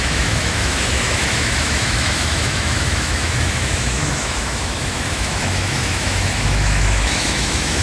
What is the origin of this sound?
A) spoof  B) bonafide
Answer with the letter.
A